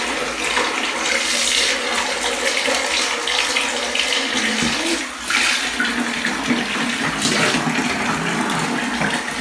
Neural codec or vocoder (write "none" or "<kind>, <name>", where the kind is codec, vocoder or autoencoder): none